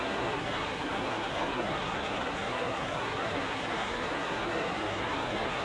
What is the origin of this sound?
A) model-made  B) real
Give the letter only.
A